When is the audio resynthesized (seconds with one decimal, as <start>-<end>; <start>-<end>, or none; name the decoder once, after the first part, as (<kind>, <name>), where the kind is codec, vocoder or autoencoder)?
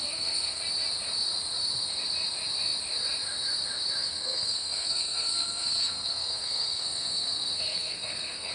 0.0-0.6 (codec, SNAC); 4.0-8.5